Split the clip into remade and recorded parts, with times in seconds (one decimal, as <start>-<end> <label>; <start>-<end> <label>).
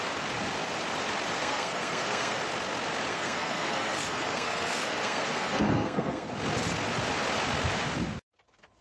0.0-1.4 recorded; 1.4-2.4 remade; 2.4-3.1 recorded; 3.1-6.3 remade; 6.3-8.8 recorded